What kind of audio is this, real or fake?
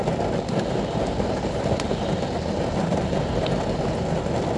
real